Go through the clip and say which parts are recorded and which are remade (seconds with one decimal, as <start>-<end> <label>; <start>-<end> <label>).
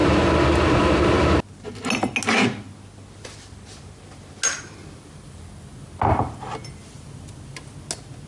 0.0-8.3 recorded